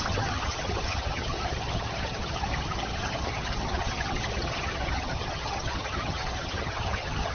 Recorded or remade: remade